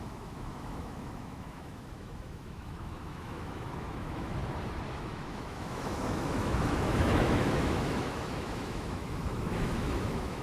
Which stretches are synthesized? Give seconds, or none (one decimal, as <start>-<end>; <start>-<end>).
0.0-4.4; 4.9-10.4